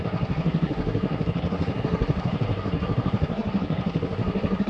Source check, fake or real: fake